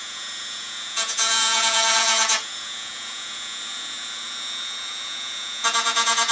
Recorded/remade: remade